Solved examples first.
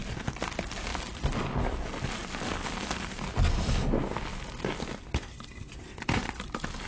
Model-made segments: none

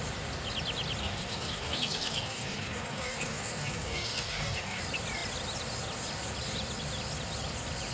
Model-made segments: 1.0-4.8 (codec, DAC)